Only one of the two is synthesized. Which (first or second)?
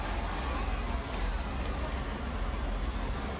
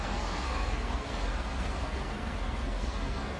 second